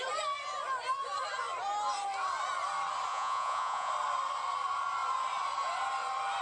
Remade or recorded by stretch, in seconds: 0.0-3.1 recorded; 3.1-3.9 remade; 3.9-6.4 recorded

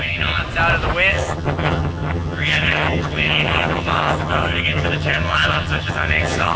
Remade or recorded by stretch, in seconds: 0.0-0.4 remade; 0.4-1.1 recorded; 1.1-6.6 remade

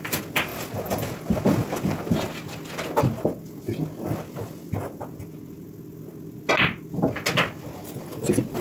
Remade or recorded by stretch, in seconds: 0.0-8.6 recorded

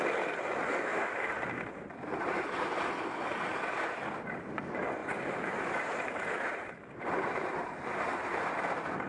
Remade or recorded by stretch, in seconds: 0.0-5.0 recorded; 5.0-8.5 remade; 8.5-9.1 recorded

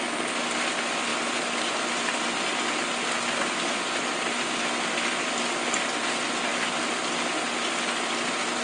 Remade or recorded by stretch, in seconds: 0.0-8.6 recorded